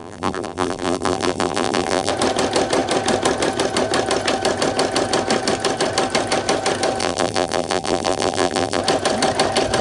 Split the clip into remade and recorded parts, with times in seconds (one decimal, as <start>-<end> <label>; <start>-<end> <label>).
0.0-2.1 remade; 2.1-7.0 recorded; 7.0-8.8 remade; 8.8-9.8 recorded